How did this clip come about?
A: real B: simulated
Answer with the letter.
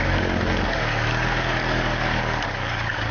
B